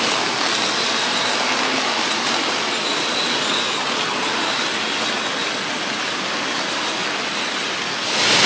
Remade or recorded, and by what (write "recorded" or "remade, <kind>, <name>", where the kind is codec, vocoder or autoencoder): recorded